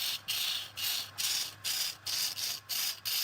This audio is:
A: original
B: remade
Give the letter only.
A